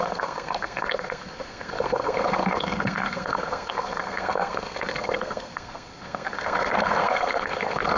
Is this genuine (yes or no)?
no